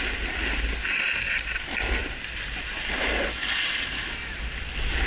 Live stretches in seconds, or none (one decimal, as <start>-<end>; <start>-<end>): 0.0-5.1